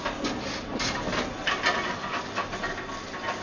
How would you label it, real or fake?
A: real